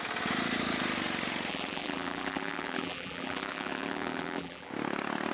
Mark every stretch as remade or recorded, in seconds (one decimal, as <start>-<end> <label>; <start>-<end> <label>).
0.0-1.5 recorded; 1.5-4.7 remade; 4.7-5.3 recorded